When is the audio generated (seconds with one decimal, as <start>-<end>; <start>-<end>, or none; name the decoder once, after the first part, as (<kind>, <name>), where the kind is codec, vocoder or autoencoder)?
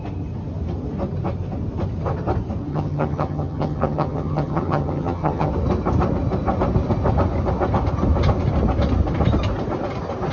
2.7-5.5 (vocoder, HiFi-GAN)